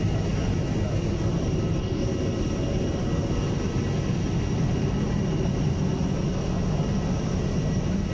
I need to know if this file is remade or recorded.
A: recorded